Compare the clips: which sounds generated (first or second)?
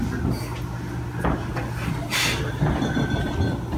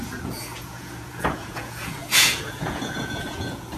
second